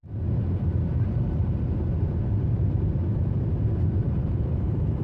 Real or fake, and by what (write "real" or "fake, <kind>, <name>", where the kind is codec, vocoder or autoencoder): fake, vocoder, BigVGAN v2